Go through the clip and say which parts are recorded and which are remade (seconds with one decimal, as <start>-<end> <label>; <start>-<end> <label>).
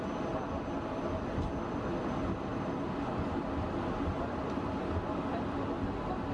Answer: 0.0-6.3 recorded